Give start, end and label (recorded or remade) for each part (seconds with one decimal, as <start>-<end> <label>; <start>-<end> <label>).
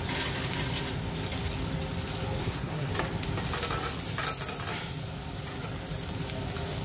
0.0-2.4 recorded; 2.4-2.9 remade; 2.9-6.8 recorded